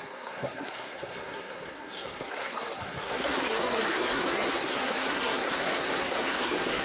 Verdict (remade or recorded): remade